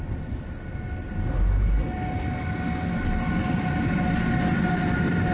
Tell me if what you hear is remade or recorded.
recorded